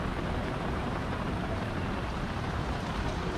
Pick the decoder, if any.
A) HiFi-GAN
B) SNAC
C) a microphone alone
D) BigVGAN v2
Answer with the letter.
D